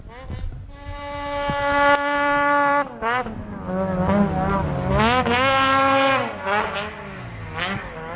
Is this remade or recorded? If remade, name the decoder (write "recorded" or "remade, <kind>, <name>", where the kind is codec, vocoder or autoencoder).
recorded